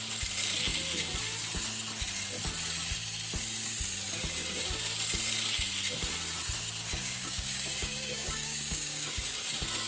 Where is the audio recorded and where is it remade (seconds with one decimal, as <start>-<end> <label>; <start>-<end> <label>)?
0.0-6.9 recorded; 6.9-9.2 remade; 9.2-9.9 recorded